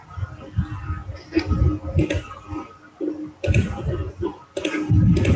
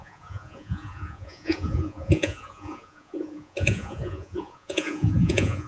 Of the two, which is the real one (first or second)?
first